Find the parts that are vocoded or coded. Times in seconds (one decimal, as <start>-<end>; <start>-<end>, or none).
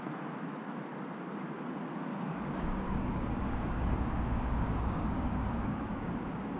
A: 2.1-6.1